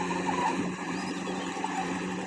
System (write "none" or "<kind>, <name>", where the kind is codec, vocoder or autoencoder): vocoder, BigVGAN v2